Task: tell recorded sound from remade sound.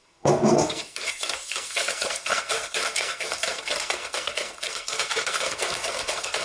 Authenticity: remade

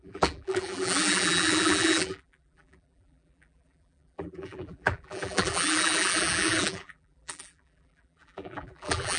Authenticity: remade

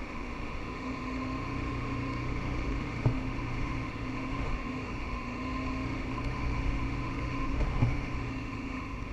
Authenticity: remade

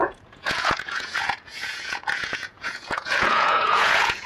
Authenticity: remade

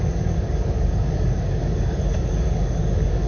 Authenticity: remade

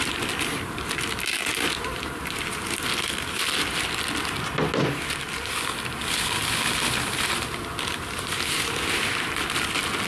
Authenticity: recorded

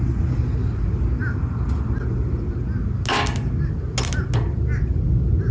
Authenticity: recorded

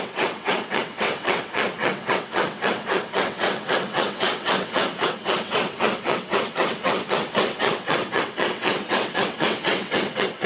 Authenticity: remade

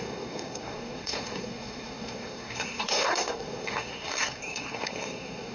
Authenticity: remade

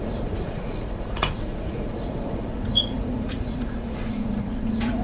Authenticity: remade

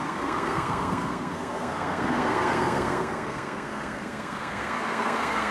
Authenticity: remade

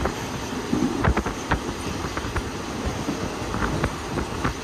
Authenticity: recorded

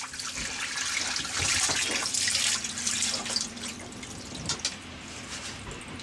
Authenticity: recorded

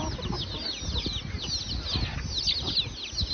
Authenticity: recorded